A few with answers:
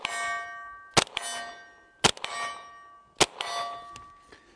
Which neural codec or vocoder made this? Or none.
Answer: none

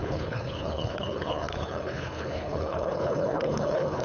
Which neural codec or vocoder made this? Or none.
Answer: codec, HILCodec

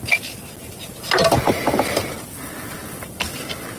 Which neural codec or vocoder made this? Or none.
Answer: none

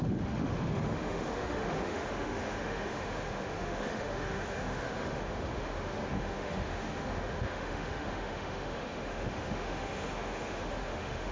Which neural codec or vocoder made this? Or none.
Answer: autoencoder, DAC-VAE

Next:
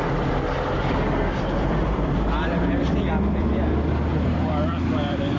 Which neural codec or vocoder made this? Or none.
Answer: vocoder, BigVGAN v2